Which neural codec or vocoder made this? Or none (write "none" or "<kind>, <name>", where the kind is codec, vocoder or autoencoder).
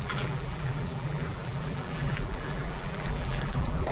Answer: vocoder, BigVGAN v2